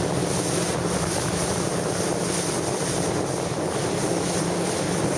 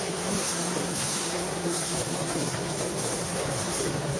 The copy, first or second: second